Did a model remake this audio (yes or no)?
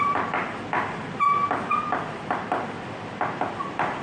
no